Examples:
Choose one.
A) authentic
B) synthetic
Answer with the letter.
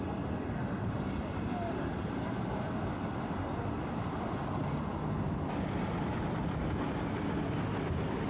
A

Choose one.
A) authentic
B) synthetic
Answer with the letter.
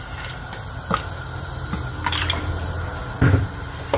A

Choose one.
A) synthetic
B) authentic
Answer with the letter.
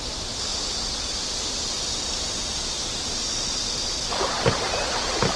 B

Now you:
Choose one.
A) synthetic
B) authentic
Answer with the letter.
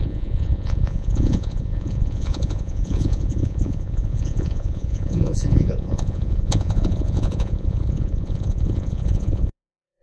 A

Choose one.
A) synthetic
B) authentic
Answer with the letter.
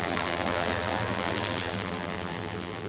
A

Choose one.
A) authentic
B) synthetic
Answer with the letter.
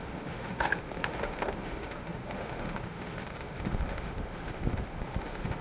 B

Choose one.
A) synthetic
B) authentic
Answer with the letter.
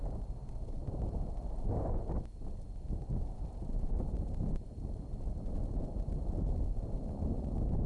B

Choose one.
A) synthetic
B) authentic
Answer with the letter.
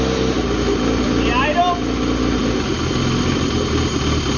B